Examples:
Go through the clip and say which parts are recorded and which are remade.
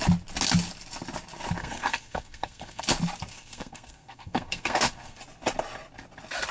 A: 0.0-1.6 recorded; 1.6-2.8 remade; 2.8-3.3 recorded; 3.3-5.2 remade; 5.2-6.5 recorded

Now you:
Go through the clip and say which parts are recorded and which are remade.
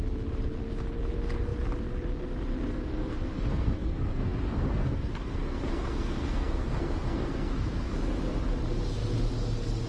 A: 0.0-2.7 recorded; 2.7-7.9 remade; 7.9-9.9 recorded